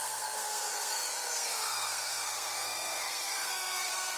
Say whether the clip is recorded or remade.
remade